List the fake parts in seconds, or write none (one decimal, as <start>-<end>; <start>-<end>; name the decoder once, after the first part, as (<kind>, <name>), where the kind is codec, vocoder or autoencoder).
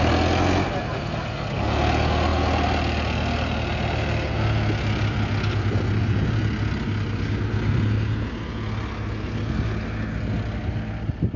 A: none